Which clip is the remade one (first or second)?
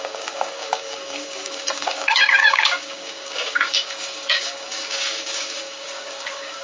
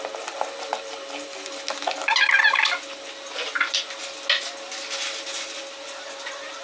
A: first